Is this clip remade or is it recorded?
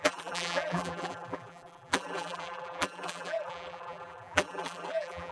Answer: remade